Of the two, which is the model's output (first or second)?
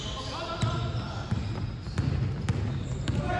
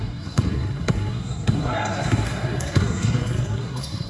second